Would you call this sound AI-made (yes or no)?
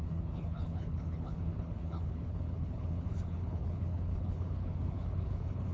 yes